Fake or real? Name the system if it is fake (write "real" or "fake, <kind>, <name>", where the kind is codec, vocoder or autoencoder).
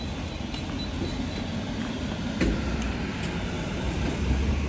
real